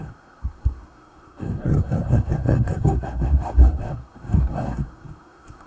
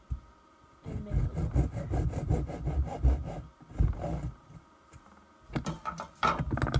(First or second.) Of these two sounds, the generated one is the first